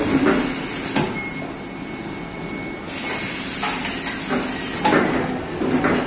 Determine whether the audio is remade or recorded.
recorded